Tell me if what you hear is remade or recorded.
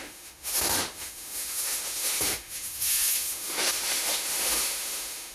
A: remade